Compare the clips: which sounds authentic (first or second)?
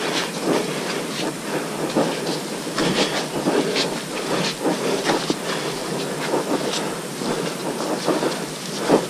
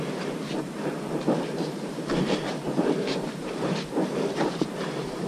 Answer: first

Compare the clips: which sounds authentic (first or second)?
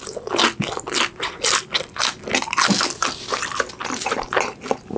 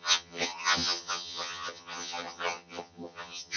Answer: first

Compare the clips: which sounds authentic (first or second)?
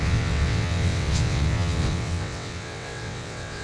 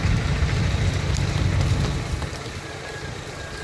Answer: second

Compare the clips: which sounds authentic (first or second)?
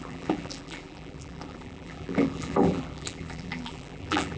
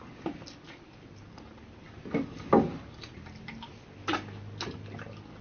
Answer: second